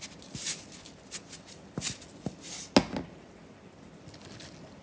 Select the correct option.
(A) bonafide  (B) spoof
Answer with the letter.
A